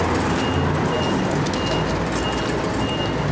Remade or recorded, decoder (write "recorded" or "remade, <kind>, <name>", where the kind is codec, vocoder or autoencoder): recorded